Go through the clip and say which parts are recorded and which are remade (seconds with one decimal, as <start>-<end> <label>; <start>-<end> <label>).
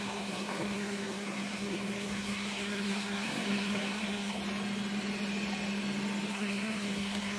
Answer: 0.0-4.4 remade; 4.4-6.3 recorded; 6.3-7.4 remade